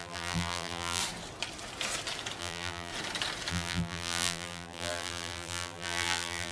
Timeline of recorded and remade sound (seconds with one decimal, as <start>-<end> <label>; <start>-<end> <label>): 0.0-1.0 remade; 1.0-2.4 recorded; 2.4-2.9 remade; 2.9-3.5 recorded; 3.5-6.5 remade